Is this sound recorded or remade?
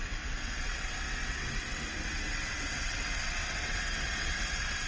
remade